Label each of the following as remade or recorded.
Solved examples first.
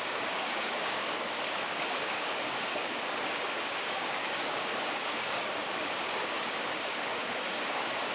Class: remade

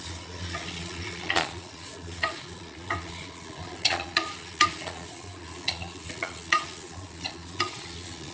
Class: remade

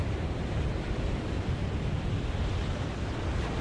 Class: recorded